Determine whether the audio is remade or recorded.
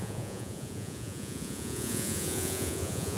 remade